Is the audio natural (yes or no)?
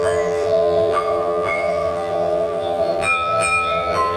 no